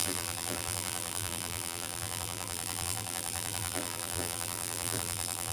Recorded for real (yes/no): no